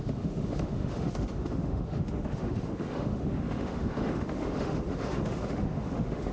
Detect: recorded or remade remade